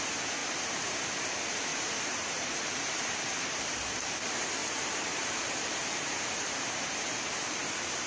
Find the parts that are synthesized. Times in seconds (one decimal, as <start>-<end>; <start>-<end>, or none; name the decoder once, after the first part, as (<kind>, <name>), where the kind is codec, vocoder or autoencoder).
0.4-1.1 (vocoder, BigVGAN v2); 1.7-2.9; 4.6-8.1